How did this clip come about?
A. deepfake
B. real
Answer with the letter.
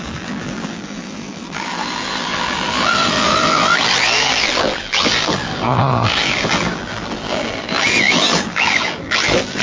A